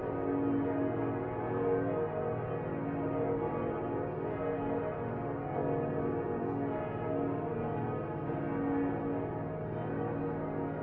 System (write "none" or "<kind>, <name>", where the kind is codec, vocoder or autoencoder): none